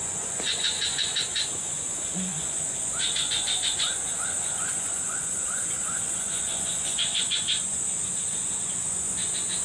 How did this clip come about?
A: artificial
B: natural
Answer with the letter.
A